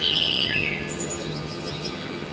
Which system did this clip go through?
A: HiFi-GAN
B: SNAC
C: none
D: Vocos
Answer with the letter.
A